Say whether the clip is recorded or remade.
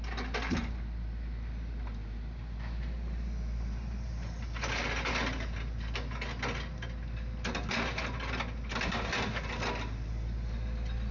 recorded